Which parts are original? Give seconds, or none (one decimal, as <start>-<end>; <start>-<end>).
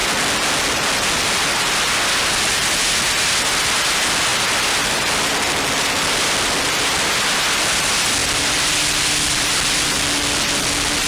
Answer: 0.0-4.3; 5.1-11.1